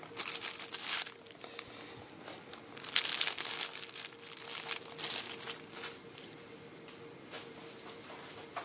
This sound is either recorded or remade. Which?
recorded